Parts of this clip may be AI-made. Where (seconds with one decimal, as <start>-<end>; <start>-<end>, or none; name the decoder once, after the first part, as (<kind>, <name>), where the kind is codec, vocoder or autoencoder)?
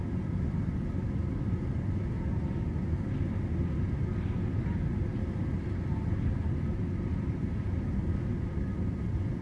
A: none